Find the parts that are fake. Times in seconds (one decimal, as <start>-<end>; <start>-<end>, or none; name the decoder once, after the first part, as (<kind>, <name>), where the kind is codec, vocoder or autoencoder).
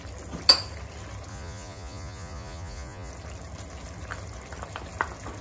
1.3-3.1 (vocoder, Vocos)